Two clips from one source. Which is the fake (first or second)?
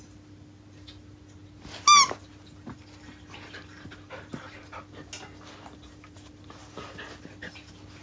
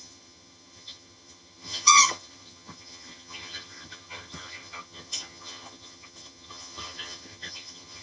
second